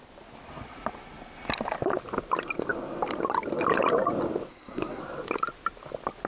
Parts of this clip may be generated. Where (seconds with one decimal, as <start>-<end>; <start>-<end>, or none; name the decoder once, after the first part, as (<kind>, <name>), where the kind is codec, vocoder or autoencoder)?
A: 4.5-5.0 (codec, SNAC)